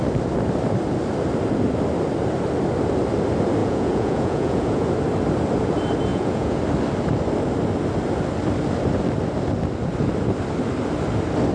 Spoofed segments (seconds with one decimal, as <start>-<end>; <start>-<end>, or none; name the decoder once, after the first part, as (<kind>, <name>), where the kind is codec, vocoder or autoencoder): 3.6-4.9 (vocoder, Vocos); 6.1-6.6